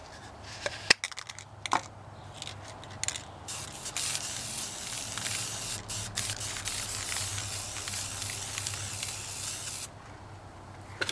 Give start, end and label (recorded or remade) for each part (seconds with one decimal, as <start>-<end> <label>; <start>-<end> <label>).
0.0-11.1 recorded